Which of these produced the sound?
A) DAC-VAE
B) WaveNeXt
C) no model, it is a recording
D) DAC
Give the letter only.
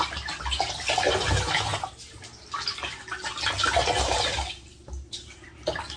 C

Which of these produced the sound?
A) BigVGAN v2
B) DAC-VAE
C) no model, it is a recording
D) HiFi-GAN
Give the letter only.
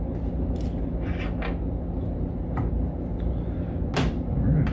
C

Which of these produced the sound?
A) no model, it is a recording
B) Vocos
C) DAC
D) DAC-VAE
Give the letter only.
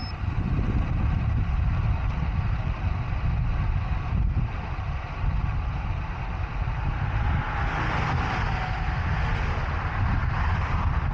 A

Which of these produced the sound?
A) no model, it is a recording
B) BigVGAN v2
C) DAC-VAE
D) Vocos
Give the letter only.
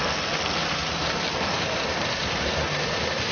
A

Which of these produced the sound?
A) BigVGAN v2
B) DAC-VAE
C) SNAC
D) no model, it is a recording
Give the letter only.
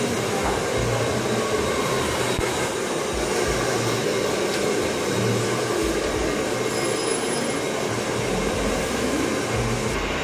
D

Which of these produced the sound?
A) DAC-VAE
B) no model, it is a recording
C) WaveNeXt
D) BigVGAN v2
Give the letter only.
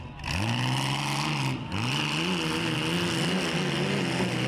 B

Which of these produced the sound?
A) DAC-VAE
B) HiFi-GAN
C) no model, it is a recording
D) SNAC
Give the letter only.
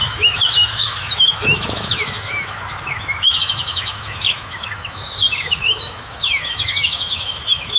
A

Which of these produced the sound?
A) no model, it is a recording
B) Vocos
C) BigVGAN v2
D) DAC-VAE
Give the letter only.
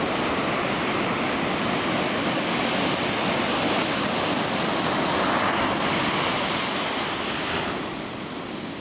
A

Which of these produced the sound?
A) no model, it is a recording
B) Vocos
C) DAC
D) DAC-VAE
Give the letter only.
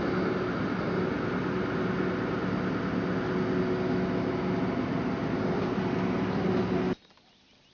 A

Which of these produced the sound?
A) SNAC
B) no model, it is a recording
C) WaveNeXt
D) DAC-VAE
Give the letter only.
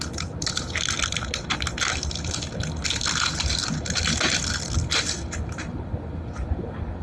B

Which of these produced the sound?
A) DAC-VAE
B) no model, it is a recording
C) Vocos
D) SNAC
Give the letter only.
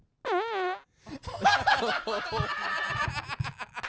B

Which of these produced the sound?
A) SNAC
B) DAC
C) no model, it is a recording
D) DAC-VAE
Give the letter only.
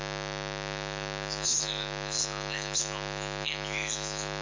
D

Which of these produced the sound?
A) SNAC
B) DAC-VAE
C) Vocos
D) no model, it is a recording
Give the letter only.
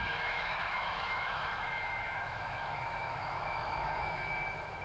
B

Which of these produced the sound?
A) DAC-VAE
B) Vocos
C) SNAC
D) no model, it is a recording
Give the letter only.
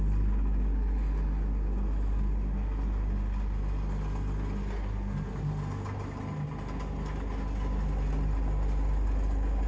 D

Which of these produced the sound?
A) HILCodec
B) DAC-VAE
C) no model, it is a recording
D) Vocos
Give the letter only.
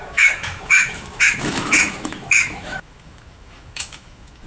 B